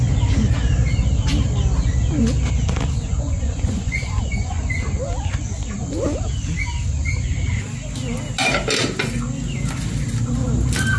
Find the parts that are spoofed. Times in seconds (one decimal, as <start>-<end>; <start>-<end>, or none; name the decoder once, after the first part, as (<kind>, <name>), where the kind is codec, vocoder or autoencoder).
3.1-4.6 (vocoder, Vocos)